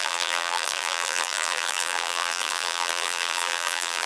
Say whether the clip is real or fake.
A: fake